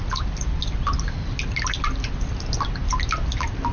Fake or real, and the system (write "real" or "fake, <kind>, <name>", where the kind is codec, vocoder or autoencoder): real